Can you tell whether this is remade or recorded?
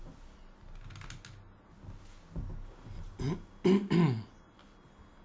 recorded